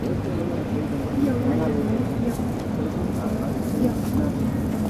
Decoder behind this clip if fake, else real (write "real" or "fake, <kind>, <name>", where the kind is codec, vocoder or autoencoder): real